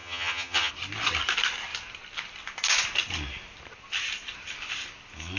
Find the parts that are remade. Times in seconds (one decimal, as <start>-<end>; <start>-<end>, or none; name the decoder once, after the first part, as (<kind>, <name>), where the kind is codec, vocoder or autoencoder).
0.0-0.7 (vocoder, HiFi-GAN)